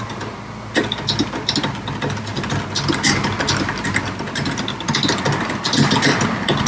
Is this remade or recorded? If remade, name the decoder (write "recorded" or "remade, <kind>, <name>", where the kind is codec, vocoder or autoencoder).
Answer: recorded